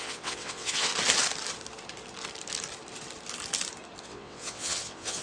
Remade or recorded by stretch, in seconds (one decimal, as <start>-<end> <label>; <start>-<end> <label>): 0.0-0.9 remade; 0.9-4.0 recorded; 4.0-5.2 remade